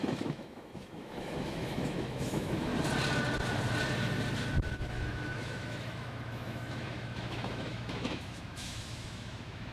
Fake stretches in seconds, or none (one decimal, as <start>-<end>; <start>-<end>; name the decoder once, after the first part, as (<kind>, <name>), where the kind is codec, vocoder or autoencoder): 0.0-2.7 (autoencoder, DAC-VAE); 4.7-9.7